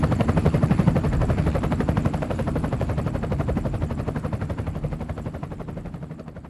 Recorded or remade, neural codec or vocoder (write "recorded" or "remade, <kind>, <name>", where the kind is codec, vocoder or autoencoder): remade, vocoder, BigVGAN v2